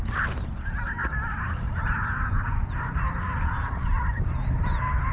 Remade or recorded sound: recorded